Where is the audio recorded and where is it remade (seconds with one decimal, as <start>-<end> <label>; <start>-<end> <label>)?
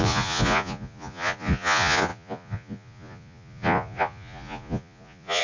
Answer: 0.0-5.4 remade